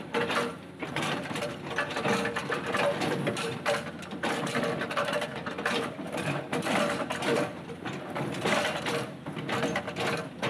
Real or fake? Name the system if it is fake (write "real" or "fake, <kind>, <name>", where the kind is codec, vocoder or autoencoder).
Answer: fake, vocoder, BigVGAN v2